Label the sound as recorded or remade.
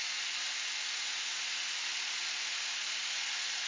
recorded